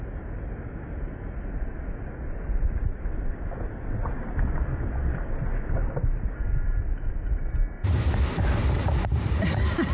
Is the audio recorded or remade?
recorded